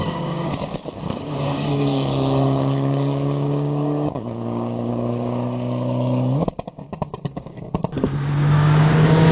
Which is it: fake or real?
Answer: fake